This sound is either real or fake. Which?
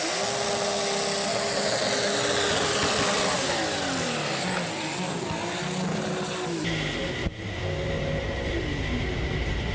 real